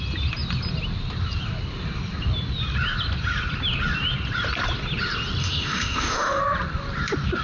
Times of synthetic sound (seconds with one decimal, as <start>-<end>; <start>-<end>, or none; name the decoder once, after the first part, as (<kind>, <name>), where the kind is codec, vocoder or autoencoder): 5.4-6.4 (autoencoder, DAC-VAE)